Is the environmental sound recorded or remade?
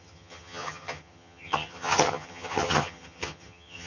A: remade